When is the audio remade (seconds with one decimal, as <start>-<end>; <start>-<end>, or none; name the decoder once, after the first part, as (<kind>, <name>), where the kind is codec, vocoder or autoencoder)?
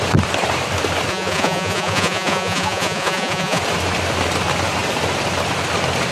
1.1-3.6 (vocoder, Vocos)